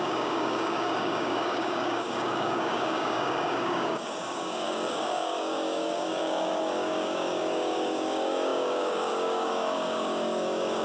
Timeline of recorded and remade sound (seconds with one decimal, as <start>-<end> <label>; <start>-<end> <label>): 0.0-10.8 remade